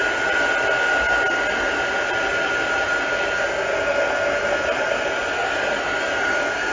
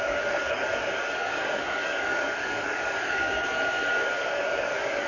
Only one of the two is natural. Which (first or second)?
first